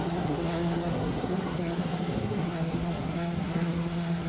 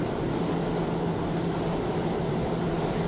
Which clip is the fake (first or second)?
first